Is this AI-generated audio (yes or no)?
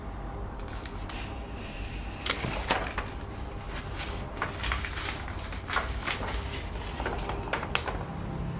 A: no